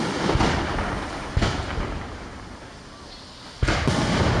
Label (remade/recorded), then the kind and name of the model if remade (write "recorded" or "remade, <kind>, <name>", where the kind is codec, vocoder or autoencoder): recorded